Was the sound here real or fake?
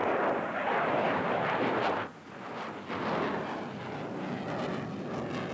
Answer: real